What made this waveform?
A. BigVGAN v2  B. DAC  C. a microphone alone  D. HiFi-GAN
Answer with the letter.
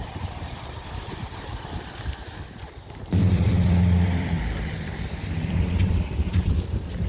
A